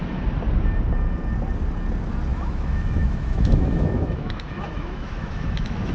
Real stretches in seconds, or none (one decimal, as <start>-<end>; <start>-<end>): 0.0-2.3